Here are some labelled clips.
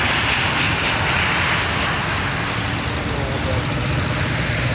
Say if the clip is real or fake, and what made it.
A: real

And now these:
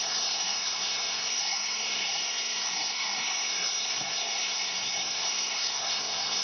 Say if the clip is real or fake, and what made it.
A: fake, codec, SNAC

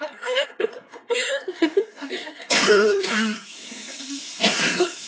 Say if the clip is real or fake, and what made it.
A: fake, codec, SNAC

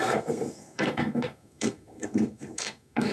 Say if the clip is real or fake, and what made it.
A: fake, codec, SNAC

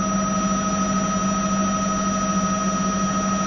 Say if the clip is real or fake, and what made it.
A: real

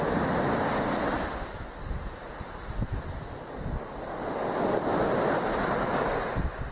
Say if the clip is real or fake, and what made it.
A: real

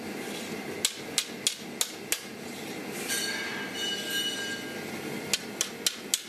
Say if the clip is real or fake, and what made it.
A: real